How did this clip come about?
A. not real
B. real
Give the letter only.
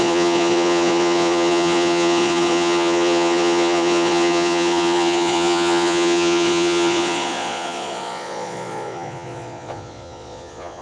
A